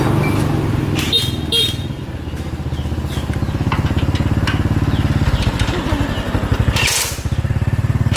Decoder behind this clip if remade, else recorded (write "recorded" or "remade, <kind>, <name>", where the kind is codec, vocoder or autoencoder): recorded